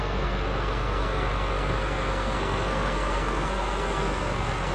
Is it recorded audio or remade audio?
remade